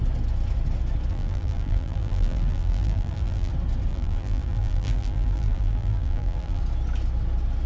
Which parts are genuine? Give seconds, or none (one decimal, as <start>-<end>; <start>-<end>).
0.0-1.1; 3.5-3.9; 6.6-7.7